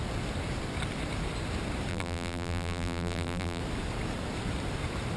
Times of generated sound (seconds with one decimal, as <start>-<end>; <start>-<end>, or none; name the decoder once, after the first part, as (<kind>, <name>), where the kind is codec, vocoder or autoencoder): 1.9-3.6 (vocoder, BigVGAN v2)